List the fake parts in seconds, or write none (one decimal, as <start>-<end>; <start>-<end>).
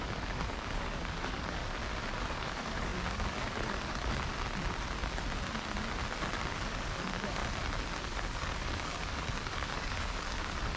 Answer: 0.0-1.6; 2.2-4.3; 6.2-7.4; 8.0-10.8